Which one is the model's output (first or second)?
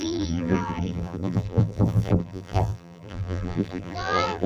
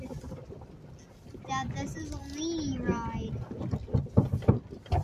first